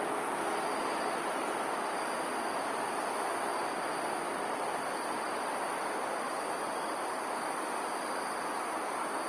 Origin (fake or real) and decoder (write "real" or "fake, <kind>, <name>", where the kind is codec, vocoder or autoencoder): real